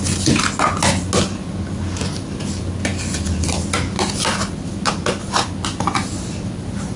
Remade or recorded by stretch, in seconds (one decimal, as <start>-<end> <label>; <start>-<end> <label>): 0.0-7.0 recorded